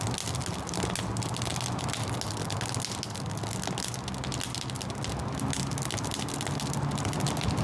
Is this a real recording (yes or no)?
yes